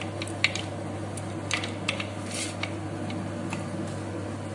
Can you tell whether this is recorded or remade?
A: recorded